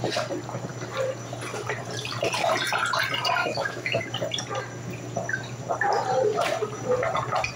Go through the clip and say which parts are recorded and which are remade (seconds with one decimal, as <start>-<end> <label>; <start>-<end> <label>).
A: 0.0-3.4 recorded; 3.4-4.0 remade; 4.0-7.6 recorded